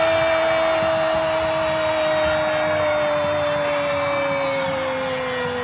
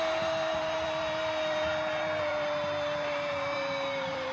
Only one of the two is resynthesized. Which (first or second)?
second